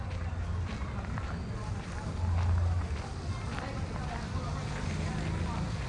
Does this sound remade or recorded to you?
recorded